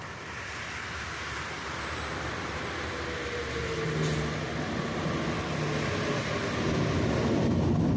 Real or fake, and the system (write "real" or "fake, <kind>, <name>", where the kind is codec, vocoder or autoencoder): real